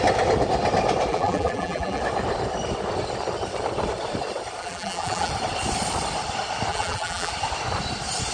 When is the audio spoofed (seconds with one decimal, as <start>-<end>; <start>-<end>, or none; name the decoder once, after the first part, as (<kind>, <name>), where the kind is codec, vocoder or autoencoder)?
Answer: 1.1-2.0 (vocoder, BigVGAN v2); 4.6-5.3; 6.7-7.3